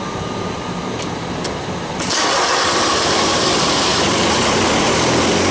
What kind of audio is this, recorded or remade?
recorded